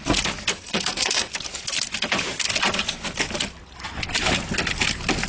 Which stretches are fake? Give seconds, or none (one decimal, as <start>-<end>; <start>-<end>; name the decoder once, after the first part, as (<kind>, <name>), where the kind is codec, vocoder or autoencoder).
0.5-1.3 (codec, SNAC)